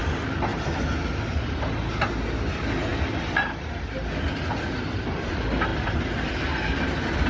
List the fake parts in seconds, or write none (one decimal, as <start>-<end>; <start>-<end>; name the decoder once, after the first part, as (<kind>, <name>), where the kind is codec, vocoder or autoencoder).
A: 0.5-2.0 (vocoder, BigVGAN v2); 2.9-3.7; 5.7-7.3